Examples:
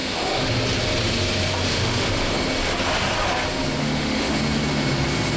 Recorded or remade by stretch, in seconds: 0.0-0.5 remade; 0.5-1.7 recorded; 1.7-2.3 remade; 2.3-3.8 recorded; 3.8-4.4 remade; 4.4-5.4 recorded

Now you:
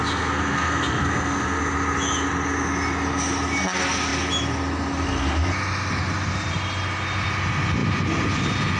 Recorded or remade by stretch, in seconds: 0.0-1.6 remade; 1.6-8.8 recorded

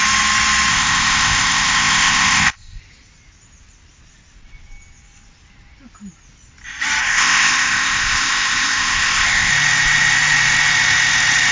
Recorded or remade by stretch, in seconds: 0.0-0.7 recorded; 0.7-2.8 remade; 2.8-7.0 recorded; 7.0-9.5 remade; 9.5-11.5 recorded

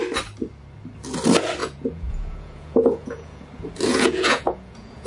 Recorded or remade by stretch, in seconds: 0.0-1.6 recorded; 1.6-3.4 remade; 3.4-3.9 recorded; 3.9-5.1 remade

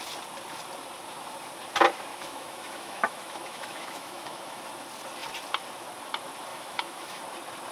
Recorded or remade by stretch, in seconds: 0.0-2.1 recorded; 2.1-4.6 remade; 4.6-6.5 recorded; 6.5-7.2 remade; 7.2-7.7 recorded

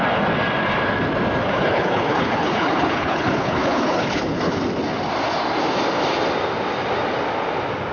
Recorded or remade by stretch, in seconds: 0.0-1.4 recorded; 1.4-4.6 remade; 4.6-7.9 recorded

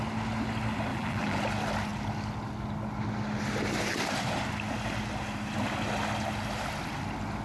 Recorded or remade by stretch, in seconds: 0.0-0.9 recorded; 0.9-1.4 remade; 1.4-7.4 recorded

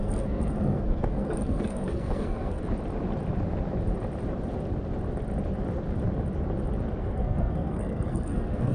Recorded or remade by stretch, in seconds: 0.0-2.6 remade; 2.6-7.0 recorded; 7.0-8.7 remade